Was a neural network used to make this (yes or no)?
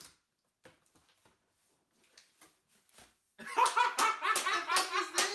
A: no